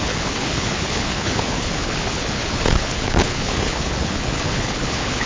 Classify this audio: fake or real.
fake